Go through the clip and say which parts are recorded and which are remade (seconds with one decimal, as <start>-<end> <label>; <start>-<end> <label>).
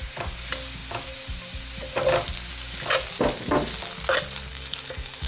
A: 0.0-4.5 recorded; 4.5-5.3 remade